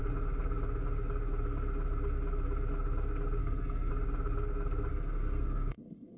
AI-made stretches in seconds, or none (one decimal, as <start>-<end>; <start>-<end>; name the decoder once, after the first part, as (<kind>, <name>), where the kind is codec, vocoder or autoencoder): 3.4-3.9 (codec, SNAC); 4.9-6.2

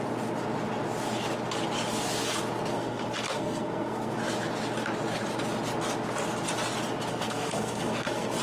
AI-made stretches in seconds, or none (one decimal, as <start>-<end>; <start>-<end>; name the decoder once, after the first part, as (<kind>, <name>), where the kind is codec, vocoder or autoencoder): 2.7-4.2 (codec, SNAC); 7.1-8.4

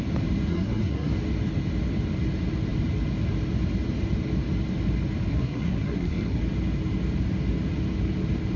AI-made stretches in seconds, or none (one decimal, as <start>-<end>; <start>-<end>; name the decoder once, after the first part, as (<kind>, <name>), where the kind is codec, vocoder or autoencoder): 0.5-1.1 (codec, SNAC); 5.3-6.4

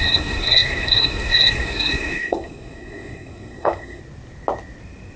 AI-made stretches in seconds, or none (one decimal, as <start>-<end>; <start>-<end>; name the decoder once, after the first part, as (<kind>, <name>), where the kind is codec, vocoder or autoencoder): 0.0-4.0 (codec, SNAC)

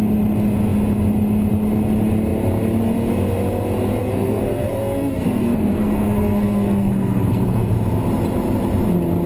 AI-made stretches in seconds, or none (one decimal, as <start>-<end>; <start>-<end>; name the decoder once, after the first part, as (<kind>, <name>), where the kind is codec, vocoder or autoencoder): 4.0-7.7 (codec, SNAC)

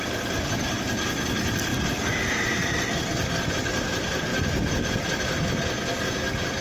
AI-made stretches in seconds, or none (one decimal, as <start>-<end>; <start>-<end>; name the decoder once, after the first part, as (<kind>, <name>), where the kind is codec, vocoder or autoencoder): none